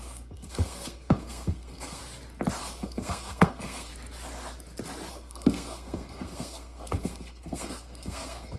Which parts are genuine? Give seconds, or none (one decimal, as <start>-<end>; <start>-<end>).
2.0-2.6; 3.9-5.1